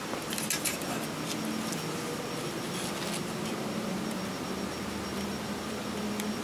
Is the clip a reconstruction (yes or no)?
no